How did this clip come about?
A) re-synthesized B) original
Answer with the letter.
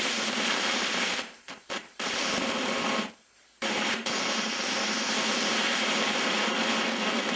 A